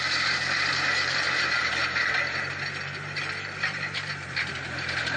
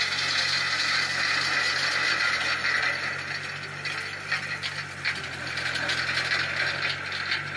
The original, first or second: second